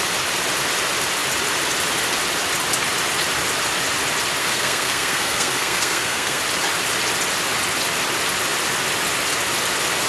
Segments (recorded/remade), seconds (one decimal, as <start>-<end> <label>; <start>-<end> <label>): 0.0-4.4 recorded; 4.4-6.4 remade; 6.4-10.1 recorded